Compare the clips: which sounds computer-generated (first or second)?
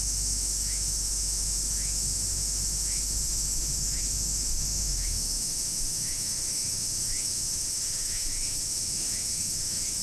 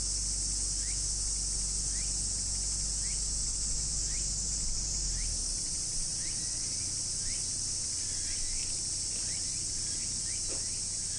first